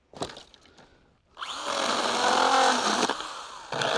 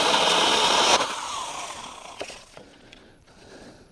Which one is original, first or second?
first